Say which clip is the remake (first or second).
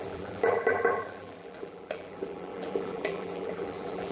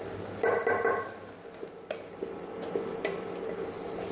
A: first